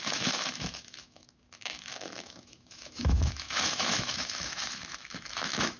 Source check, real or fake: fake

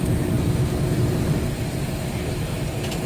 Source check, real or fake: real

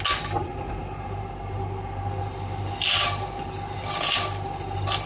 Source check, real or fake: real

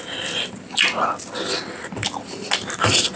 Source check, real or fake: real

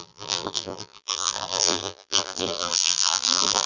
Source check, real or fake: fake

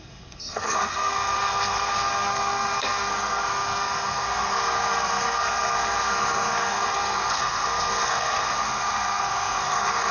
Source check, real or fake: fake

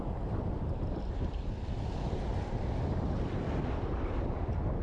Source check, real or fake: real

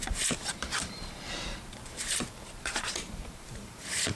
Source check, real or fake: fake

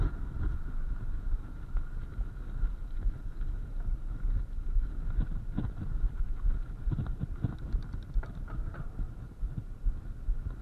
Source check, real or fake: real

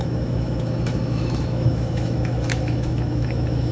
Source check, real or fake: fake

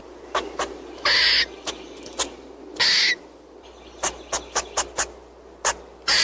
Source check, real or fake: real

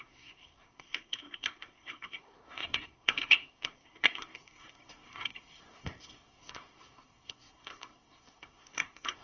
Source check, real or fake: fake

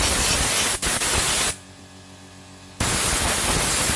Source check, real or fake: real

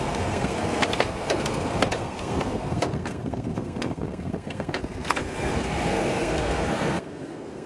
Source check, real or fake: fake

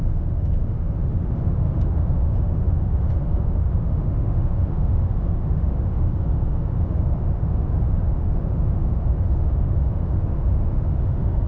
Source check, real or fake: fake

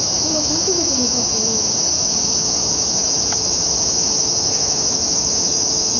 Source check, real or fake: fake